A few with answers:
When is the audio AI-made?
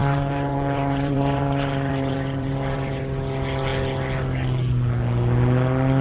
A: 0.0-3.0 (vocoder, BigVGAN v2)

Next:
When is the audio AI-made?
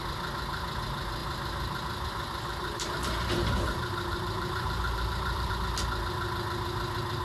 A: 1.2-5.5 (vocoder, BigVGAN v2)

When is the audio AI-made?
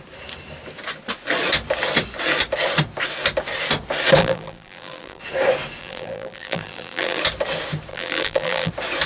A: 4.2-5.2 (vocoder, BigVGAN v2); 5.8-7.2; 7.9-8.7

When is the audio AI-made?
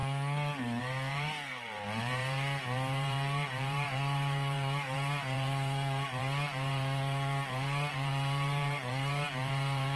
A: 0.8-10.0 (vocoder, BigVGAN v2)